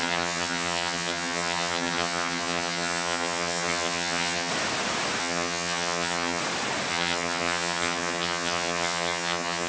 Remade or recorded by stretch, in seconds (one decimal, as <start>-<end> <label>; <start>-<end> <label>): 0.0-4.5 remade; 4.5-5.2 recorded; 5.2-6.4 remade; 6.4-6.9 recorded; 6.9-9.7 remade